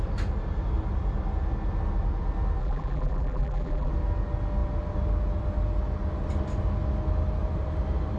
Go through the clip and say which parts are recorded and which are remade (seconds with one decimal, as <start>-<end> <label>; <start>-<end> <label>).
0.0-2.6 recorded; 2.6-3.9 remade; 3.9-8.2 recorded